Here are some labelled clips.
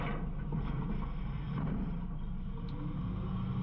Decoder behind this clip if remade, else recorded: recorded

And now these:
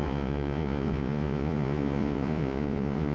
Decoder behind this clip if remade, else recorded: remade, vocoder, Vocos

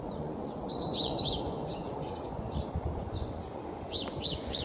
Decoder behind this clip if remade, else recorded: remade, vocoder, Vocos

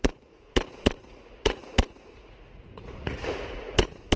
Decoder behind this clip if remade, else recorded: remade, vocoder, Vocos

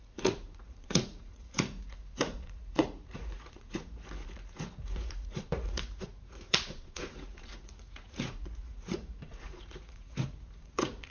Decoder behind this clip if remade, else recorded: remade, vocoder, Vocos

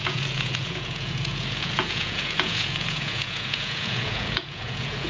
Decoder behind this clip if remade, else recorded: remade, vocoder, Vocos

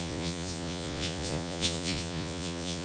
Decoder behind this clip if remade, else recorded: remade, vocoder, Vocos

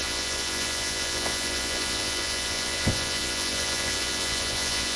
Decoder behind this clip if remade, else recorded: remade, vocoder, Vocos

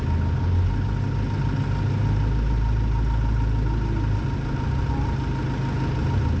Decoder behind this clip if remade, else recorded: recorded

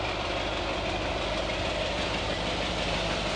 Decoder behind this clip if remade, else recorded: recorded